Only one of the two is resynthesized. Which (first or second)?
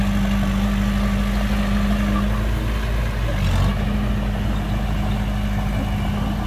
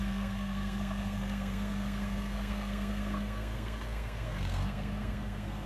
second